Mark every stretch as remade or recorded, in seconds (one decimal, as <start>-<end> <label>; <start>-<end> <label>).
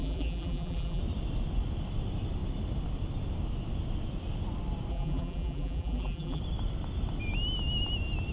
0.0-1.0 remade; 1.0-4.9 recorded; 4.9-6.4 remade; 6.4-8.3 recorded